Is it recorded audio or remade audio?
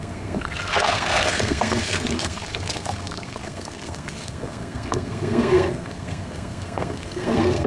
remade